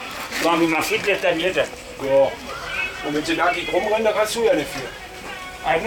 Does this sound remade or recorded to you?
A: remade